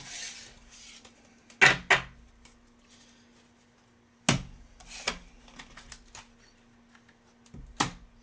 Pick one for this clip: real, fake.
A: real